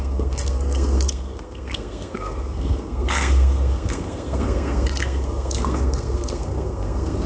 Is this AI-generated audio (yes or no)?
yes